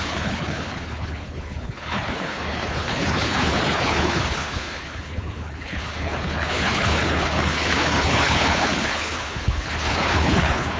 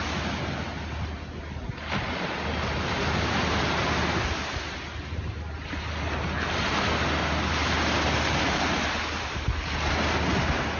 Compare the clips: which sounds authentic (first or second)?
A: second